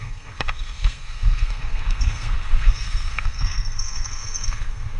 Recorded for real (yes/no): no